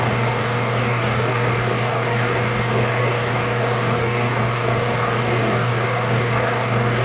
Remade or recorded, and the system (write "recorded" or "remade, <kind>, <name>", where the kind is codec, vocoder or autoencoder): remade, codec, DAC